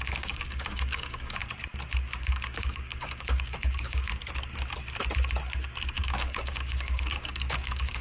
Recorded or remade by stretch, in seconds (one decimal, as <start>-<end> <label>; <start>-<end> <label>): 0.0-1.4 remade; 1.4-2.2 recorded; 2.2-4.1 remade; 4.1-6.0 recorded; 6.0-8.0 remade

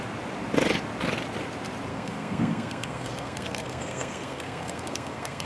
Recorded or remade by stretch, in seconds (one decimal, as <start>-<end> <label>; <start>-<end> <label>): 0.0-1.9 recorded; 1.9-5.5 remade

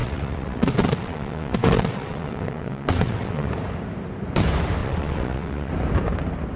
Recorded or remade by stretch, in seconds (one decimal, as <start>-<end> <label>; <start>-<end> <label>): 0.0-3.5 remade; 3.5-4.8 recorded; 4.8-5.7 remade; 5.7-6.6 recorded

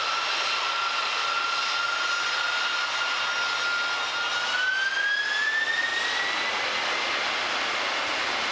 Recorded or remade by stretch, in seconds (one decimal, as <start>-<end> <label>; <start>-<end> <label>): 0.0-8.5 recorded

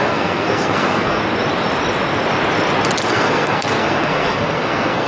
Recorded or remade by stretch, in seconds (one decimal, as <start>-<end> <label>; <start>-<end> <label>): 0.0-1.2 remade; 1.2-3.1 recorded; 3.1-5.1 remade

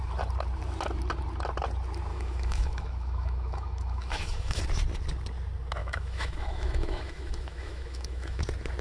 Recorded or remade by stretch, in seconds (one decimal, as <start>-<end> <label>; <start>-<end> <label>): 0.0-2.1 recorded; 2.1-4.6 remade; 4.6-5.8 recorded; 5.8-8.4 remade; 8.4-8.8 recorded

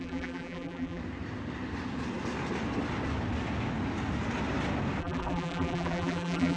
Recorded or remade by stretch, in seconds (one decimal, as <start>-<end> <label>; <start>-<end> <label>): 0.0-1.0 remade; 1.0-5.0 recorded; 5.0-6.6 remade